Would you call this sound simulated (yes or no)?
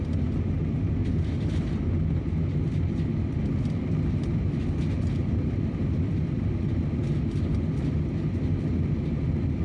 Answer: no